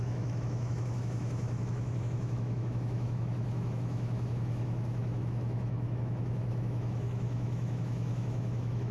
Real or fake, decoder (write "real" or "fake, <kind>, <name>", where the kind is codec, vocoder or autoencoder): fake, autoencoder, DAC-VAE